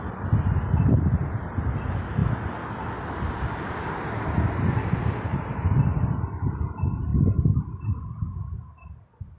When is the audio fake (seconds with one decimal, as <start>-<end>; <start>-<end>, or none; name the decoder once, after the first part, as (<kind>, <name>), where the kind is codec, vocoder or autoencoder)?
none